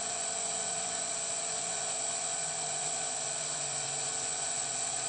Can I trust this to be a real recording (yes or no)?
no